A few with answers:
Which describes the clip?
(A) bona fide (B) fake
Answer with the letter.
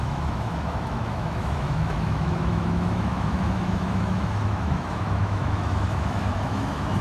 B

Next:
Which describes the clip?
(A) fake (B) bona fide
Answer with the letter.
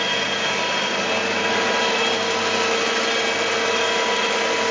B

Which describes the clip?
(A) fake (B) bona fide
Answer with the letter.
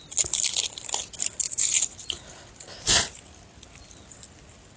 B